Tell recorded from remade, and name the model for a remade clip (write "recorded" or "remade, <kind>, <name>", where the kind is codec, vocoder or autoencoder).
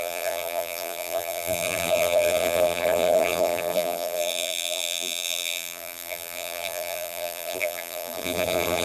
remade, vocoder, BigVGAN v2